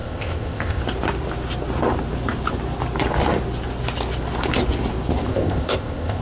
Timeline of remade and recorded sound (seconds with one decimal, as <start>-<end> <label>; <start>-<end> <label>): 0.0-0.8 remade; 0.8-5.3 recorded; 5.3-6.2 remade